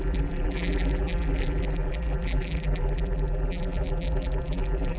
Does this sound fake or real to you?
fake